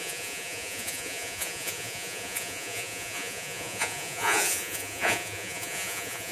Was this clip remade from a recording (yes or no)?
yes